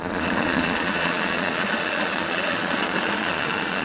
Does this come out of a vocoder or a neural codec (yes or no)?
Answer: yes